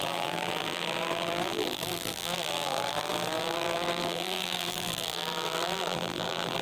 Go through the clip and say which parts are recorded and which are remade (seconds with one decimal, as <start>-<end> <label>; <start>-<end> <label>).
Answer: 0.0-6.6 remade